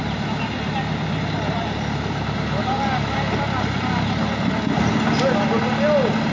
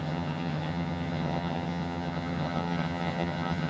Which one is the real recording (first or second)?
first